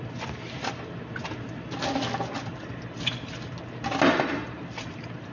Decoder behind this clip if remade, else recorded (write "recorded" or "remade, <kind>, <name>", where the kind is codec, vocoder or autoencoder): recorded